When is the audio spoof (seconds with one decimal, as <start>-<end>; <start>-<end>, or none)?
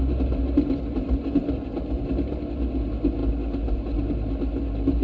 none